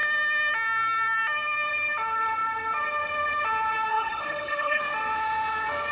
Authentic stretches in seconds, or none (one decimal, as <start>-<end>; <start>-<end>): 0.0-3.9; 4.8-5.9